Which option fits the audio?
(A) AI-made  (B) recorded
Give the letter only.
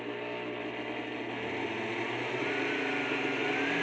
B